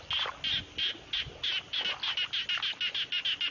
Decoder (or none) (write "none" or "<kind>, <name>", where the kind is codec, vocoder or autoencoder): none